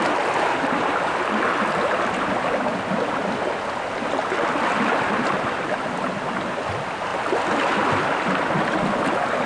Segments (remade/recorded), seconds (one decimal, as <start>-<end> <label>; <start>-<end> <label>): 0.0-9.5 recorded